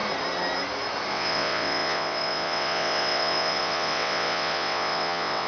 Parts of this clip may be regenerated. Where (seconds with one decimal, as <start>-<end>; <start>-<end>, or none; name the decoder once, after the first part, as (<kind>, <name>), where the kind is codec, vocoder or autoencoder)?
1.1-5.5 (vocoder, WaveNeXt)